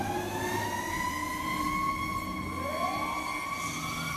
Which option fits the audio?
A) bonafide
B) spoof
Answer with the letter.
A